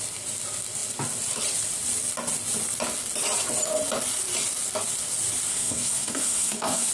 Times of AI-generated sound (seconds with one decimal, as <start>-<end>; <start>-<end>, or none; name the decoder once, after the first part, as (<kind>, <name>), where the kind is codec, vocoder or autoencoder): 5.5-6.9 (codec, SNAC)

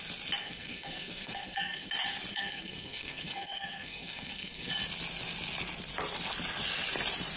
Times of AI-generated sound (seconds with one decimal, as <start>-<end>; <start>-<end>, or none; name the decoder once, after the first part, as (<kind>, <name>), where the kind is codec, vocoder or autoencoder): 0.4-1.9 (codec, SNAC); 2.3-4.7

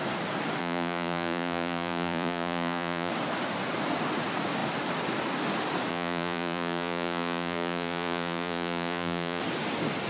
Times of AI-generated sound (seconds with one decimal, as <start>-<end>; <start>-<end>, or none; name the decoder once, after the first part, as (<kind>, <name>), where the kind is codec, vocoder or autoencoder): 0.6-3.1 (vocoder, Vocos); 5.9-9.4

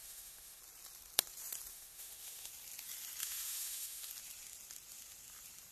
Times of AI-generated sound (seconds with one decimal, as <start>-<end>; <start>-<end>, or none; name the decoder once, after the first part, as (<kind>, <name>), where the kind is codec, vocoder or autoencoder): 0.0-0.6 (autoencoder, DAC-VAE); 1.7-2.5; 3.2-4.1